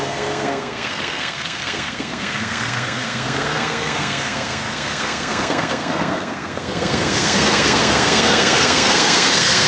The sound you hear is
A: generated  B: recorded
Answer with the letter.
A